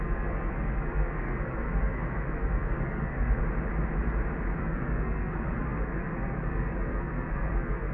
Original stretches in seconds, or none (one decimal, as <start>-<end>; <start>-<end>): 3.4-4.6